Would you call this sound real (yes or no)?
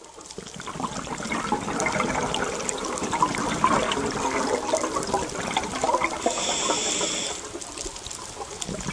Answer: yes